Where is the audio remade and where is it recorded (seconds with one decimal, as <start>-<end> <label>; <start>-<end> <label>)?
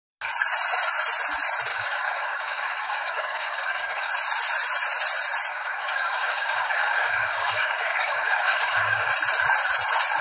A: 0.0-1.7 recorded; 1.7-4.1 remade; 4.1-5.5 recorded; 5.5-9.1 remade; 9.1-10.2 recorded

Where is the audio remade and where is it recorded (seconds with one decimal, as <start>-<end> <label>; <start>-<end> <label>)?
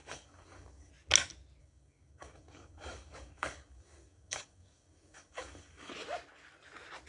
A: 0.0-0.9 remade; 0.9-1.6 recorded; 1.6-5.9 remade; 5.9-7.1 recorded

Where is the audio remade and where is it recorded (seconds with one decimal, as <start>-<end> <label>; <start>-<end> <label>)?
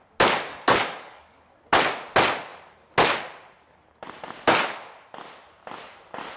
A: 0.0-0.5 recorded; 0.5-1.4 remade; 1.4-6.4 recorded